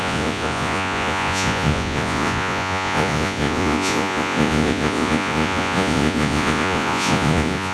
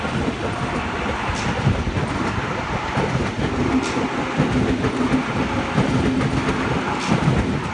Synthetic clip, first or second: first